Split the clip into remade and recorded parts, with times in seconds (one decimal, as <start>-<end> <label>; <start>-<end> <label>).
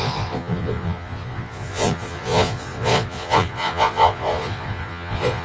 0.0-5.4 remade